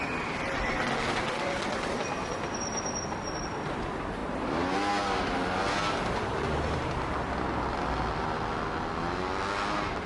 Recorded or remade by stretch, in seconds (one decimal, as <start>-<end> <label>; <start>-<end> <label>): 0.0-10.1 recorded